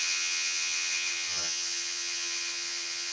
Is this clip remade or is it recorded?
remade